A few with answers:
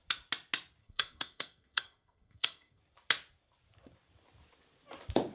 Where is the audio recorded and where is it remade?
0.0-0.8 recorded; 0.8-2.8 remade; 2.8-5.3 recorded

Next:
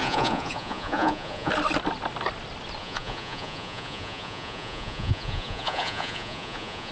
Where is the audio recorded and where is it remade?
0.0-1.5 remade; 1.5-2.8 recorded; 2.8-6.9 remade

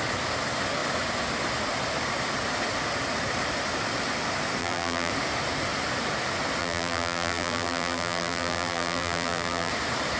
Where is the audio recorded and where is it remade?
0.0-4.6 recorded; 4.6-5.1 remade; 5.1-6.6 recorded; 6.6-9.7 remade; 9.7-10.2 recorded

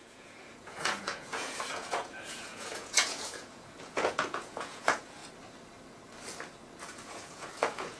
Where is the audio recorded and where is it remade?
0.0-5.2 remade; 5.2-6.8 recorded; 6.8-8.0 remade

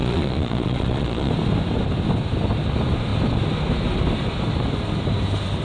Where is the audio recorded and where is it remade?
0.0-1.3 remade; 1.3-5.6 recorded

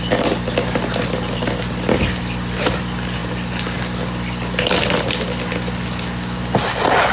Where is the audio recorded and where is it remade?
0.0-7.1 recorded

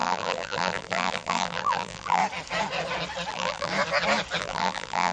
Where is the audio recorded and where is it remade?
0.0-2.2 remade; 2.2-3.3 recorded; 3.3-3.7 remade; 3.7-4.4 recorded; 4.4-5.1 remade